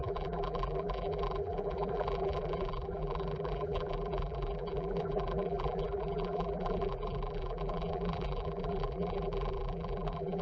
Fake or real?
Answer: fake